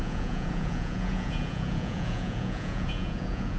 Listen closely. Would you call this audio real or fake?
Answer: fake